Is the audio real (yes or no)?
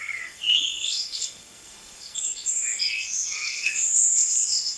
no